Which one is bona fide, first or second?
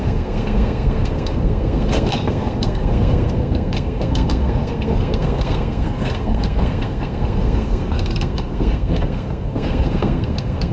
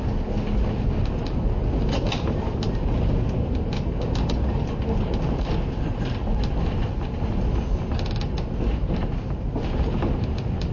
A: second